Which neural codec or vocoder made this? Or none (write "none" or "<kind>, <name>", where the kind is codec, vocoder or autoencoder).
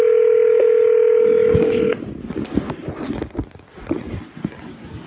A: none